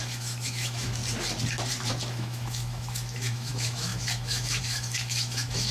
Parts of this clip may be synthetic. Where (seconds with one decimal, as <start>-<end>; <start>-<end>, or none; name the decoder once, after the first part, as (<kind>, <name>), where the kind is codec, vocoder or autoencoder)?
0.0-1.0 (autoencoder, DAC-VAE); 2.1-5.7